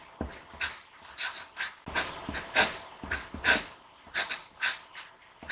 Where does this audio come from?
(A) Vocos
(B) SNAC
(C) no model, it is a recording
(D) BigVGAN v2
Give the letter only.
C